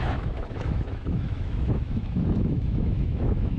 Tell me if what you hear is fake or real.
fake